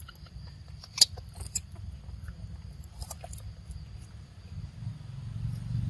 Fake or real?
real